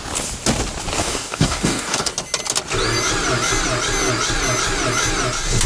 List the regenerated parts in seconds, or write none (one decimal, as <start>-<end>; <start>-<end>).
1.0-2.1